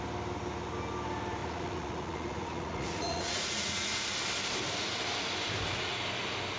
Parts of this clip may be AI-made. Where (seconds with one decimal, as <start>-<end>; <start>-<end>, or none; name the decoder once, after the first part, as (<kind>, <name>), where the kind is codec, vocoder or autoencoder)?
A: 1.4-4.1 (vocoder, Vocos)

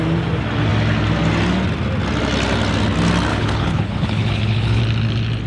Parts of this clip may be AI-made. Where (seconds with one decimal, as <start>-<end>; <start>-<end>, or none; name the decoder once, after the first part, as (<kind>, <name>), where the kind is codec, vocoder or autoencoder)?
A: 3.3-4.8 (codec, HILCodec)

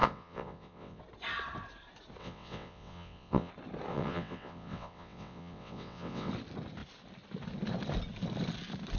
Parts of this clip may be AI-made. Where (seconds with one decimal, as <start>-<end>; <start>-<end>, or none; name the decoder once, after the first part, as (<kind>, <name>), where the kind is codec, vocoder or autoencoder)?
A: 0.0-1.0 (vocoder, WaveNeXt); 2.2-3.5; 3.9-6.3

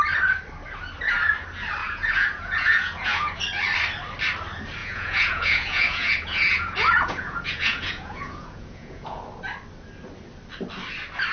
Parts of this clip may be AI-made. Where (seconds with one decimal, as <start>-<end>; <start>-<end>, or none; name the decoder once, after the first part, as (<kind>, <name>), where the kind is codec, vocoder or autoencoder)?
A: 1.8-3.4 (vocoder, Vocos); 4.8-9.2